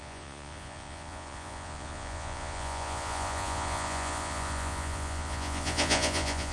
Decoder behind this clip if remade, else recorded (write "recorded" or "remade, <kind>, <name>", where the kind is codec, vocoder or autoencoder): remade, vocoder, Vocos